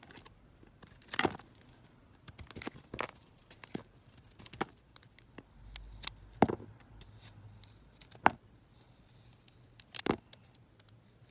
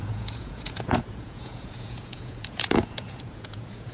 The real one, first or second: first